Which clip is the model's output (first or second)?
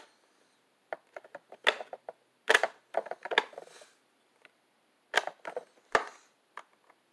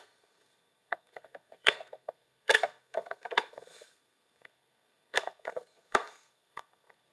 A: second